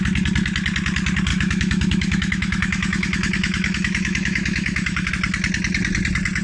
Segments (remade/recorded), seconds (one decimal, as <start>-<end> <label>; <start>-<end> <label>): 0.0-1.3 recorded; 1.3-5.1 remade; 5.1-6.4 recorded